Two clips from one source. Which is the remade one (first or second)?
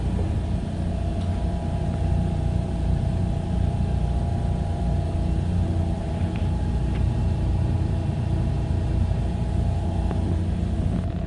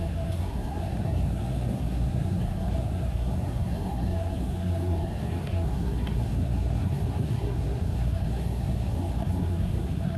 second